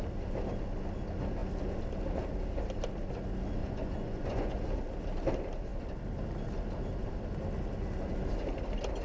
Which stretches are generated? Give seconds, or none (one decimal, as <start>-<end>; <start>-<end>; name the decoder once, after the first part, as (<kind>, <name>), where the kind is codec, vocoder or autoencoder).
3.6-4.6 (vocoder, Vocos)